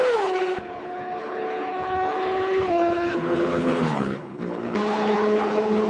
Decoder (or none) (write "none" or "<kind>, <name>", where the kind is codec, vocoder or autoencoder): codec, HILCodec